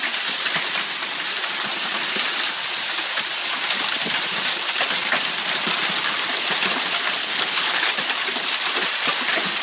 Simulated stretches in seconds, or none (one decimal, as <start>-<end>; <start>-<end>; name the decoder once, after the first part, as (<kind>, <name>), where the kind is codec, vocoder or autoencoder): 7.2-7.9 (codec, HILCodec)